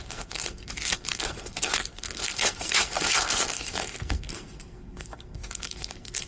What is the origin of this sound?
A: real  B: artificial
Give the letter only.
B